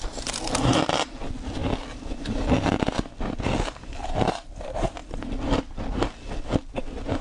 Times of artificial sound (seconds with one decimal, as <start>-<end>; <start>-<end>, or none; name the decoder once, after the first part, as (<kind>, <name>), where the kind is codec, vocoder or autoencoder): none